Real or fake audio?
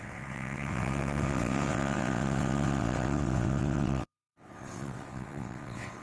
fake